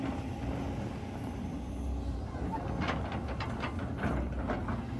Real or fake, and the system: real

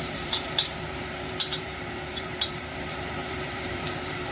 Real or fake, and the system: fake, vocoder, BigVGAN v2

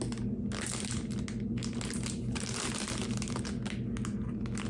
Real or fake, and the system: real